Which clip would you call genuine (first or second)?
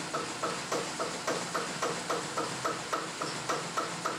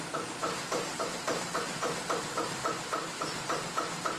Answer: first